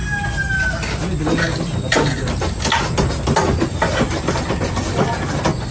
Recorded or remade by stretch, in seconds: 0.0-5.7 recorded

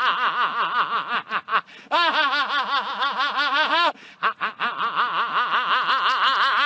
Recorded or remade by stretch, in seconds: 0.0-6.7 recorded